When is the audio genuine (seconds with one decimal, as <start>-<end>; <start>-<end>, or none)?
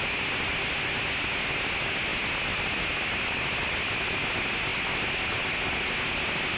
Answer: 0.0-6.6